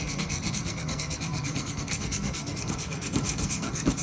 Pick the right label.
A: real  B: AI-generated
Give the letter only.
B